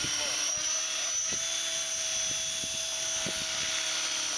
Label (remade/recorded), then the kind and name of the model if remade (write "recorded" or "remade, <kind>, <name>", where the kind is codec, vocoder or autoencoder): recorded